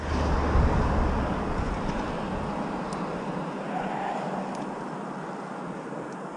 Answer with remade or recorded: recorded